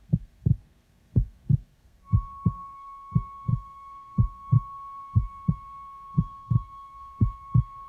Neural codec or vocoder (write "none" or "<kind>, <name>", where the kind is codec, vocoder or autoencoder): codec, SNAC